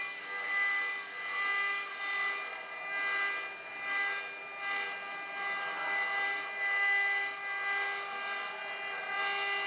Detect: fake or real real